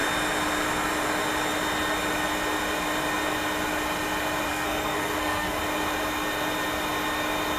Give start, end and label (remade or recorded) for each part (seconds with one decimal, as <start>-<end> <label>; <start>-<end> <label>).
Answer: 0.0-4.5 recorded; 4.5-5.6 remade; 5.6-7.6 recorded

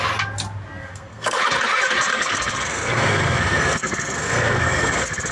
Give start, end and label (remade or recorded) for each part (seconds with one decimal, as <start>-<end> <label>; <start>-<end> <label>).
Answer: 0.0-0.8 recorded; 0.8-1.4 remade; 1.4-2.1 recorded; 2.1-5.3 remade

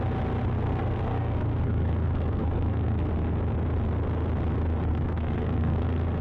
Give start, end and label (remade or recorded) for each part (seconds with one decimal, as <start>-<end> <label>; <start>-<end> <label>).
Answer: 0.0-0.4 recorded; 0.4-3.1 remade; 3.1-4.9 recorded; 4.9-6.2 remade